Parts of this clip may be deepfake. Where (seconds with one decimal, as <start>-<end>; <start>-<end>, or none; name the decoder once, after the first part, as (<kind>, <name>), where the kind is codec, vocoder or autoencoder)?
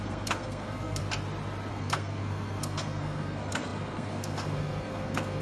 0.0-1.0 (codec, SNAC); 1.7-5.4